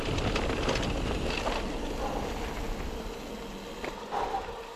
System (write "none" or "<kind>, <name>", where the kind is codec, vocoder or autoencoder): none